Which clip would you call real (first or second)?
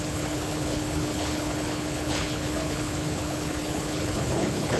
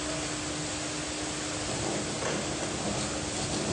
second